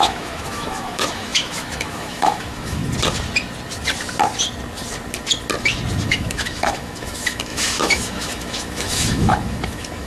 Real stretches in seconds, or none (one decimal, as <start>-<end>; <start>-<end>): 2.8-6.0